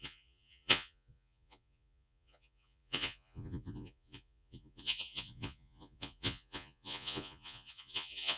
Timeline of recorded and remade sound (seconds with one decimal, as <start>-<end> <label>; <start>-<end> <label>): 0.0-8.4 remade